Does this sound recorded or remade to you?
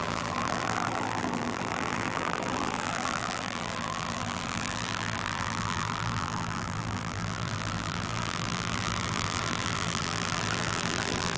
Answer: remade